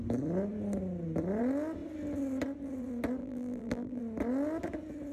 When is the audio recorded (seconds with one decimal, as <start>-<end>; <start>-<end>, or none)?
0.0-3.2; 4.0-5.1